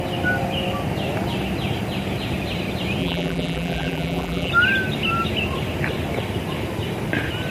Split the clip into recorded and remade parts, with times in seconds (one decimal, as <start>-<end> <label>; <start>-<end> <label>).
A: 0.0-3.0 recorded; 3.0-4.5 remade; 4.5-7.5 recorded